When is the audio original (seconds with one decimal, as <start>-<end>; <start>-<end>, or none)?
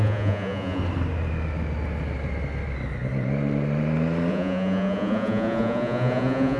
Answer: 0.8-4.3